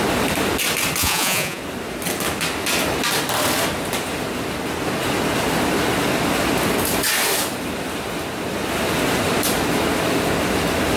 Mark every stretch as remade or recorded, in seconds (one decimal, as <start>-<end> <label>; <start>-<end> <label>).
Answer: 0.0-1.0 recorded; 1.0-1.6 remade; 1.6-11.0 recorded